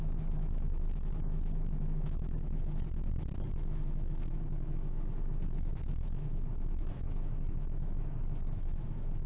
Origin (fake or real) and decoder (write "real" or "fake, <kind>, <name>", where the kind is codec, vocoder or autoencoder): fake, autoencoder, DAC-VAE